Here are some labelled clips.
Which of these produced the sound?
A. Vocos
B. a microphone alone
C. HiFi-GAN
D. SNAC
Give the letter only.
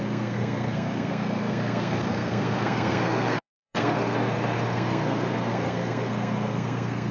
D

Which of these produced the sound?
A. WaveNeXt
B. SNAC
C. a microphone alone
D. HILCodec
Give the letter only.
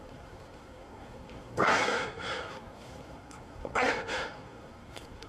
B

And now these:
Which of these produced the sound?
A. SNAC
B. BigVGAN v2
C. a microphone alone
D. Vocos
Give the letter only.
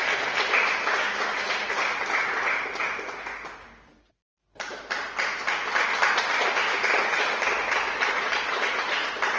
C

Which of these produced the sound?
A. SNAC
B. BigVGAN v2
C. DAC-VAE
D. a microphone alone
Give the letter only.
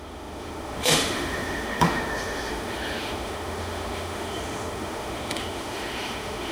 C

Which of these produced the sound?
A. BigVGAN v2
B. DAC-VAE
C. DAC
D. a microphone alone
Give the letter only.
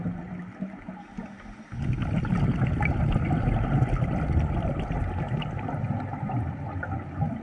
D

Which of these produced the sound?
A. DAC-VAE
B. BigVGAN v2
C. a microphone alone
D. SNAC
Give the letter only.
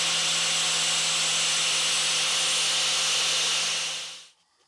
C